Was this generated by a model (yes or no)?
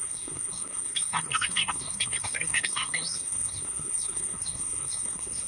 yes